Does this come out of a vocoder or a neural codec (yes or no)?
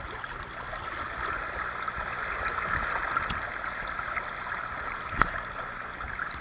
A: no